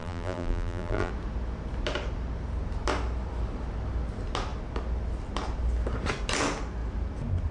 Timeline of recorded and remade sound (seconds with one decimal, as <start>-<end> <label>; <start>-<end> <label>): 0.0-1.1 remade; 1.1-7.5 recorded